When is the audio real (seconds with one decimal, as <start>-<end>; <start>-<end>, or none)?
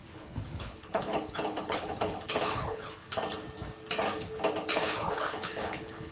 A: 3.2-4.7